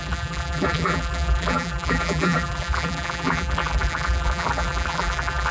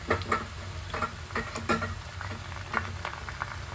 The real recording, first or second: second